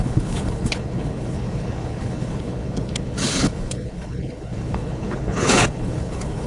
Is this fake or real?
fake